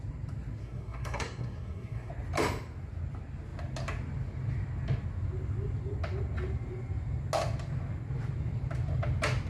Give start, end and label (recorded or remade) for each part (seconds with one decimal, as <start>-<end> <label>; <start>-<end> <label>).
0.0-0.6 recorded; 0.6-2.1 remade; 2.1-9.5 recorded